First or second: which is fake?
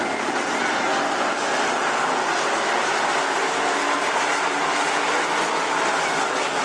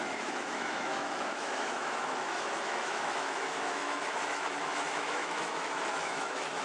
second